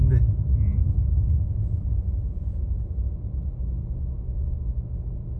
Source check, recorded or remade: recorded